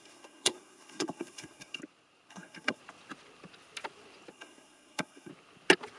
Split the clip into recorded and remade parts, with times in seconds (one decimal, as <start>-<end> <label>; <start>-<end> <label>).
0.0-1.8 remade; 1.8-2.3 recorded; 2.3-2.8 remade; 2.8-4.3 recorded; 4.3-5.3 remade; 5.3-6.0 recorded